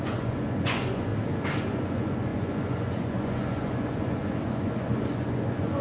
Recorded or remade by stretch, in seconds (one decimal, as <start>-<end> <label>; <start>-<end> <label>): 0.0-1.1 remade; 1.1-1.6 recorded; 1.6-5.8 remade